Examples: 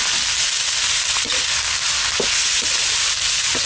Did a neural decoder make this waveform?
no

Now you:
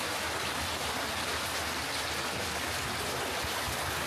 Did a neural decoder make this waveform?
no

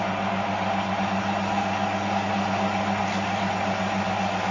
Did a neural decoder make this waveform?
no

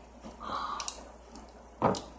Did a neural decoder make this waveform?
no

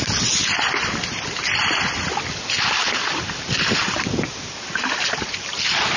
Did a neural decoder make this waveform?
no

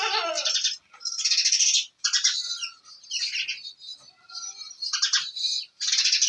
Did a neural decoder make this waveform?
yes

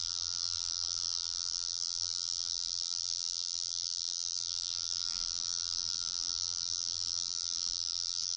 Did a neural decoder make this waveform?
yes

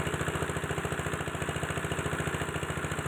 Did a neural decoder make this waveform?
no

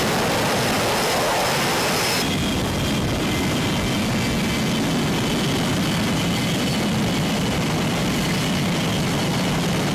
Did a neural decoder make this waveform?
no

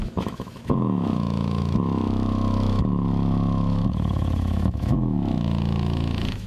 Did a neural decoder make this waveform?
yes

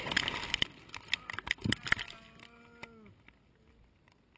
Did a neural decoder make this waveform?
no